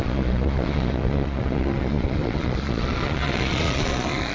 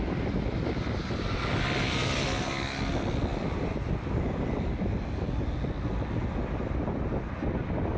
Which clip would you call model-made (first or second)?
first